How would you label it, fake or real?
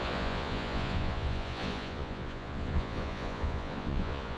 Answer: fake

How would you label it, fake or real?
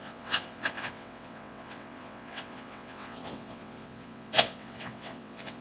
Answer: fake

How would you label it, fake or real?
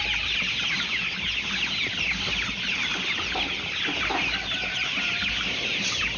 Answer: real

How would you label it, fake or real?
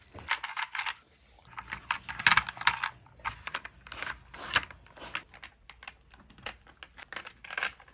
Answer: real